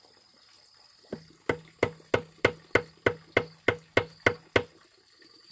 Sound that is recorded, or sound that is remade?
recorded